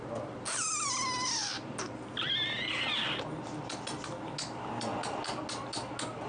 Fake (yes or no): no